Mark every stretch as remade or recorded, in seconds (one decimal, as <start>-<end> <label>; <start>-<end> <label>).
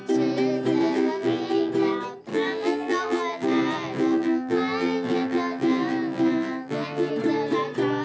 0.0-0.8 recorded; 0.8-1.7 remade; 1.7-2.3 recorded; 2.3-7.1 remade; 7.1-8.0 recorded